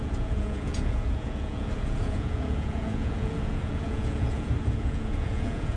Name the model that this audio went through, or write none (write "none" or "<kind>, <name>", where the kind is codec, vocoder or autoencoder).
vocoder, Vocos